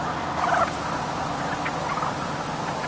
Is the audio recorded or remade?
recorded